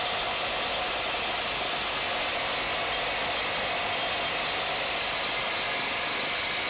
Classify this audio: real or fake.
real